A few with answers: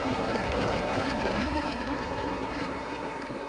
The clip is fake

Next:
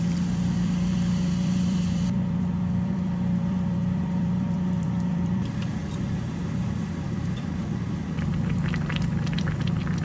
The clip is fake